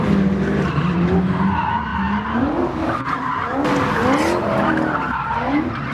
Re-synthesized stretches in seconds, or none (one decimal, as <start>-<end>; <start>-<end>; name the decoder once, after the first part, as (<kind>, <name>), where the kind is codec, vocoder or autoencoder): 1.9-3.3 (vocoder, BigVGAN v2)